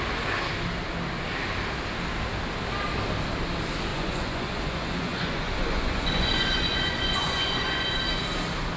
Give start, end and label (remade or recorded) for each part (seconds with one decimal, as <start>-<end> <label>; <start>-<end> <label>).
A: 0.0-3.9 recorded; 3.9-8.0 remade; 8.0-8.8 recorded